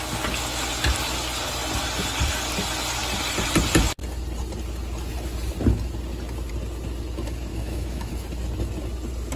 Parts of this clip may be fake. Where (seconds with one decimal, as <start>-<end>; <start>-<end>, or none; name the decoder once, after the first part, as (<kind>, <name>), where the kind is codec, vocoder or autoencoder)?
7.5-8.1 (autoencoder, DAC-VAE)